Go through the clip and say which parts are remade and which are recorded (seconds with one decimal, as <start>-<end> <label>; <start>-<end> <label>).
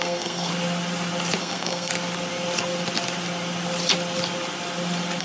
0.0-0.5 remade; 0.5-1.4 recorded; 1.4-1.9 remade; 1.9-5.2 recorded